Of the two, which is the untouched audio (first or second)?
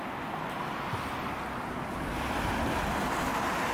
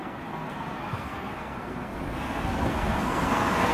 first